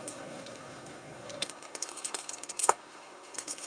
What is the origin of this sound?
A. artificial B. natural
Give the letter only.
A